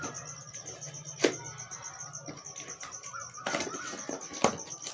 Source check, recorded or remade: recorded